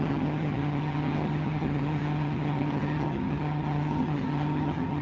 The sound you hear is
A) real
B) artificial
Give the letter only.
B